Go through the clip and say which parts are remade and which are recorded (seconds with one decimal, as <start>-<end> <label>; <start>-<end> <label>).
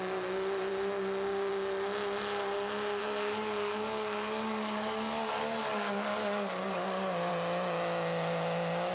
0.0-3.0 recorded; 3.0-7.3 remade; 7.3-8.9 recorded